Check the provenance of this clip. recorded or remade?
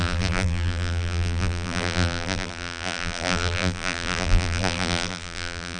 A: remade